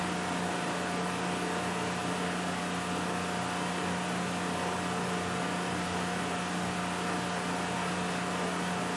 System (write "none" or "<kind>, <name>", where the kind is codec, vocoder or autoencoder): none